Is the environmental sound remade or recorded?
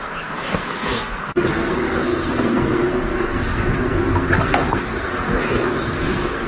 remade